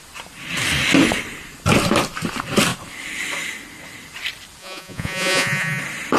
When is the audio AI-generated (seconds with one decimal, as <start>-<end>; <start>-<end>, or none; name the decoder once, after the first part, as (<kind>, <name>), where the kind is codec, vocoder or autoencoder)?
4.6-5.8 (vocoder, Vocos)

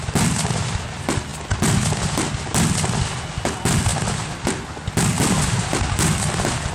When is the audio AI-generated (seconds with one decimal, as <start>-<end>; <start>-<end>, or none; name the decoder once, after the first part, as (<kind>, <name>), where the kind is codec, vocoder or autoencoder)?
none

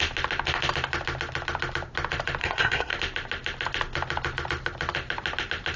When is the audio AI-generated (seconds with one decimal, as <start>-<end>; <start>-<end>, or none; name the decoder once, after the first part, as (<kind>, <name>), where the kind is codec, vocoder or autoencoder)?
2.4-2.9 (codec, SNAC)

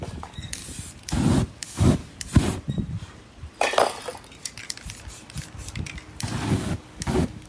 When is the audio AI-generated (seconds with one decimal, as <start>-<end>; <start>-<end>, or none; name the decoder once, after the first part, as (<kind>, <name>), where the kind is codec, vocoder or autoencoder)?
0.0-0.6 (codec, DAC); 1.6-2.0; 6.5-7.5

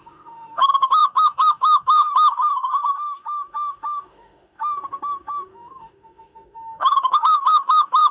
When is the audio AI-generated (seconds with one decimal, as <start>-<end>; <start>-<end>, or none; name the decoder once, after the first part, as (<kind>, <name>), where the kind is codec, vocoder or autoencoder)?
0.0-8.1 (autoencoder, DAC-VAE)